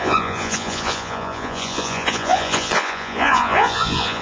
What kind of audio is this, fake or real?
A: fake